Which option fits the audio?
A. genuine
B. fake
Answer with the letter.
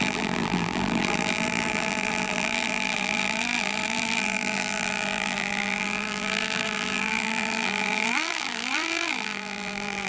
B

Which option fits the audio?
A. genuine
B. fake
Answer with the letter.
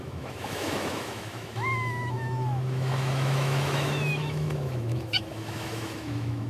B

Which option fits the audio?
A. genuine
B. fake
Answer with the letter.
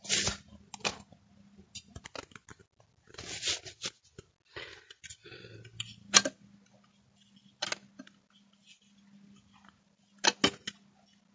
A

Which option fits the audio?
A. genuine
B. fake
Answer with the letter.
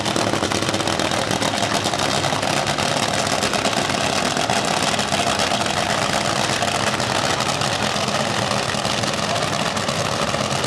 A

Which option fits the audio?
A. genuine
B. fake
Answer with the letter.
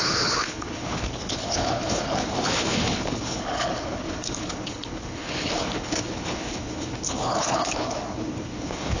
B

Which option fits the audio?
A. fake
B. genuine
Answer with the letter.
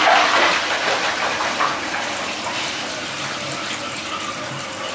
B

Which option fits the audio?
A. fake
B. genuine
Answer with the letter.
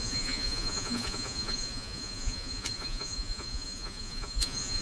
A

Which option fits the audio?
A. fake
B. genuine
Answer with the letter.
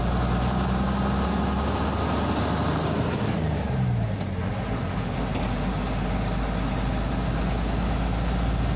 B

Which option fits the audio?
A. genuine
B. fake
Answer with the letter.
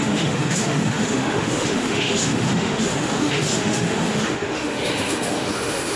B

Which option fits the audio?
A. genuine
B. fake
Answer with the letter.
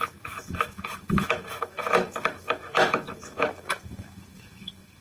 B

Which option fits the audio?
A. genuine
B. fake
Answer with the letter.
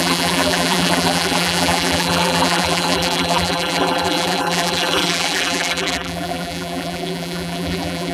B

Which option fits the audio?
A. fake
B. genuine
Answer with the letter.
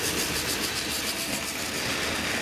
B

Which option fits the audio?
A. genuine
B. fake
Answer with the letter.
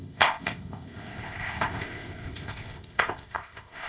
B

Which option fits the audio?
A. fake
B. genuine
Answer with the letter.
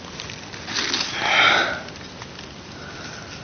B